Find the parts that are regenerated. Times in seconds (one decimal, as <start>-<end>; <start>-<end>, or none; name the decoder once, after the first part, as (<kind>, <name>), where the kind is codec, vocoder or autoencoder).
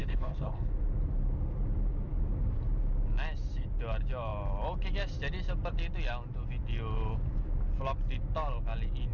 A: 0.0-0.7 (codec, HILCodec)